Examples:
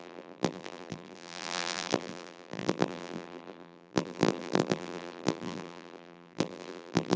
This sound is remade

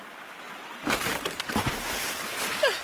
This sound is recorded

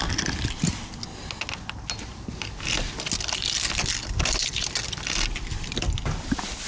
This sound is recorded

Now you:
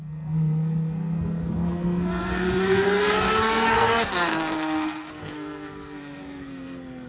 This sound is remade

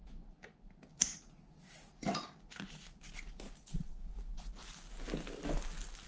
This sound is recorded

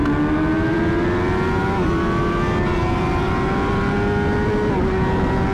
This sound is recorded